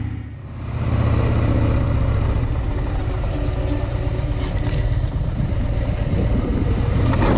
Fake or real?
real